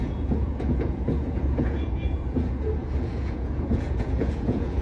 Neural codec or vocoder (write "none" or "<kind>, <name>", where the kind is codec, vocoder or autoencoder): vocoder, Vocos